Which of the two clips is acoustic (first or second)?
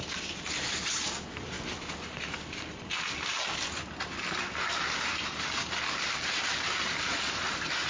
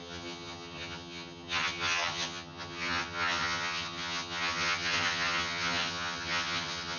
first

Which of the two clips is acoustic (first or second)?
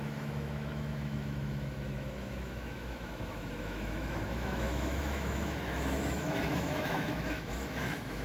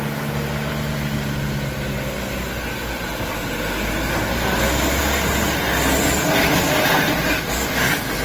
second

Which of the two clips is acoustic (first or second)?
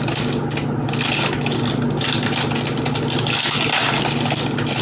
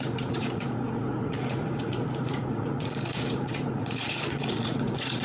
first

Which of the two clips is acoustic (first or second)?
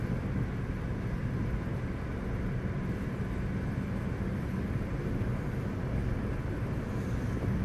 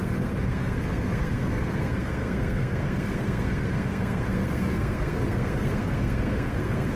first